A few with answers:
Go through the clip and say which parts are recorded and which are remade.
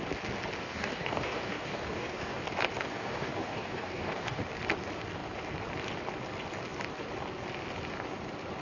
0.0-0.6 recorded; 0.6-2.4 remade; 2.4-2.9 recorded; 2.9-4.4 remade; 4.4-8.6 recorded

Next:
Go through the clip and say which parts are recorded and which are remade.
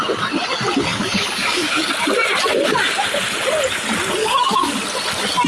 0.0-0.9 recorded; 0.9-1.9 remade; 1.9-4.2 recorded; 4.2-4.8 remade; 4.8-5.5 recorded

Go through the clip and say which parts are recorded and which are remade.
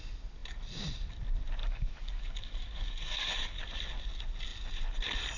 0.0-1.6 recorded; 1.6-3.6 remade; 3.6-5.4 recorded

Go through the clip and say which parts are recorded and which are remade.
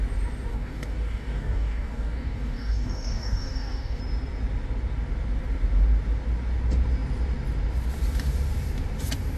0.0-0.5 recorded; 0.5-4.0 remade; 4.0-9.4 recorded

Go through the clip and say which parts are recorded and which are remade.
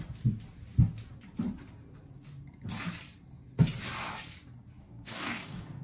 0.0-4.8 recorded; 4.8-5.8 remade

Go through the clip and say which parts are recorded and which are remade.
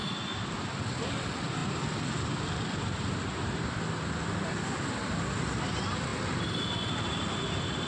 0.0-7.9 recorded